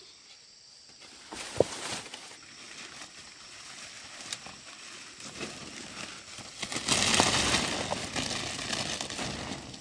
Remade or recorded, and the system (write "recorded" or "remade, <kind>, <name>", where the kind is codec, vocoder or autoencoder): recorded